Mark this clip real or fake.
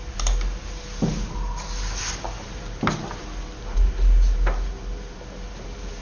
real